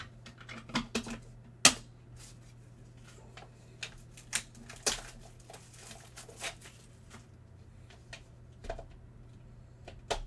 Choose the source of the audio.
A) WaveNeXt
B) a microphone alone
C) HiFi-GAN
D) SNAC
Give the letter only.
B